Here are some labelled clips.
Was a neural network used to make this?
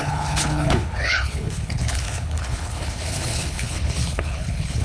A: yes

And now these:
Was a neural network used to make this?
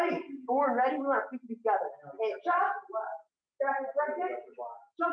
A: no